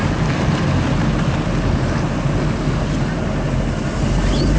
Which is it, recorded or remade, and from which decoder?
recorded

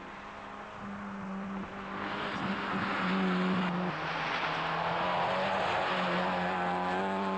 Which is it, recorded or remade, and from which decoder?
recorded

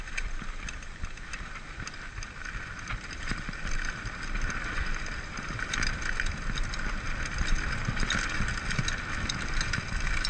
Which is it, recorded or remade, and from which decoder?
recorded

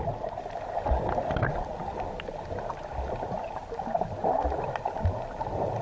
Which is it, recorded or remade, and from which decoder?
recorded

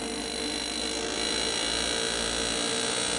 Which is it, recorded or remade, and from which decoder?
recorded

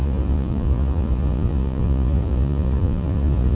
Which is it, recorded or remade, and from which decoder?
remade, vocoder, Vocos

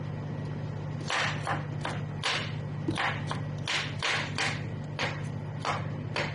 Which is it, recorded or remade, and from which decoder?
recorded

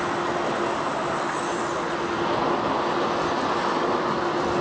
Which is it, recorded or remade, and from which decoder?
recorded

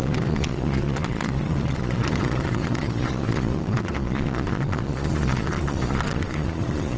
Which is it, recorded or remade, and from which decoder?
remade, vocoder, Vocos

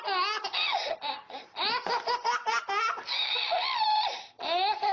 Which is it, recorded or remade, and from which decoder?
recorded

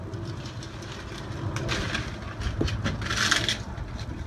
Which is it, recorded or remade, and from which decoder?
recorded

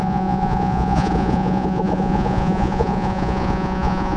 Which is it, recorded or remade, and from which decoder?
remade, vocoder, Vocos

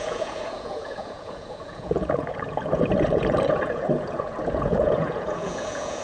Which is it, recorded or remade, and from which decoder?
remade, vocoder, Vocos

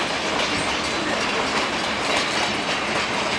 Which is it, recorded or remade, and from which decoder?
recorded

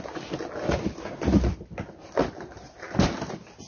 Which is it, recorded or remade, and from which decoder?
recorded